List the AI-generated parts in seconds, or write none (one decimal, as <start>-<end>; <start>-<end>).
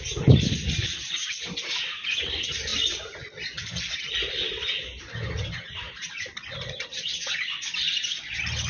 none